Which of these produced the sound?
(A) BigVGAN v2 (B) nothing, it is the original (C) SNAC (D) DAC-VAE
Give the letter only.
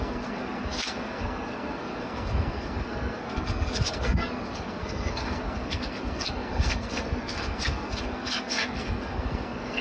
C